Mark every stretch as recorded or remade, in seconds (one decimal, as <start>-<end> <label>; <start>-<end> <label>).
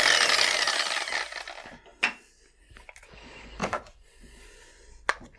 0.0-3.6 recorded; 3.6-5.4 remade